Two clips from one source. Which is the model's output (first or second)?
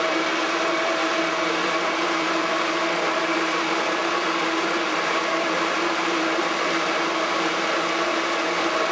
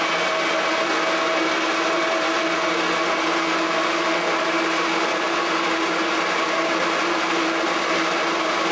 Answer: first